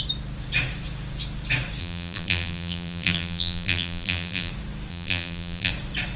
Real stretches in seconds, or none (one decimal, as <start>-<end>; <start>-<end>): 0.0-1.8; 4.5-4.9; 5.7-6.2